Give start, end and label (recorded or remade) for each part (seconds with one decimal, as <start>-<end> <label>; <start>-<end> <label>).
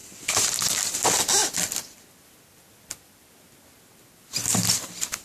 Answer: 0.0-5.2 recorded